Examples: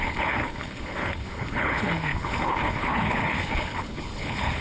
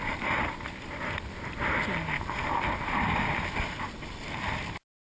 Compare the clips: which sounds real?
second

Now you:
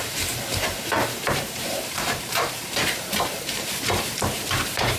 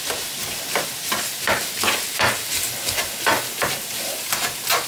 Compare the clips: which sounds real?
second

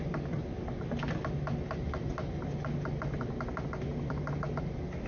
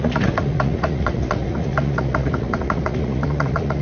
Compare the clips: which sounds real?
first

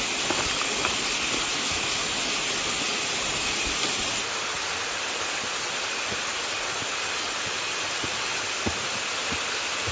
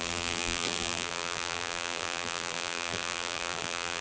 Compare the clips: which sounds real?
first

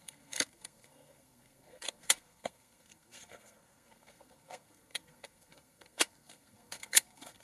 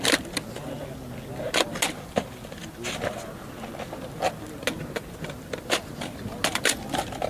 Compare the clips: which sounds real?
second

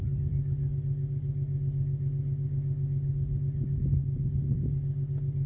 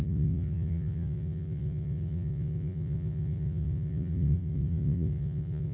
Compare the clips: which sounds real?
first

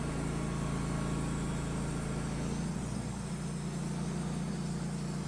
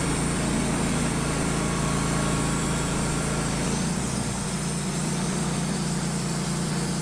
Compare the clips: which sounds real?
first